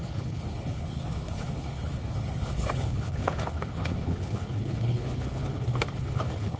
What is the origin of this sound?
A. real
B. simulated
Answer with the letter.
B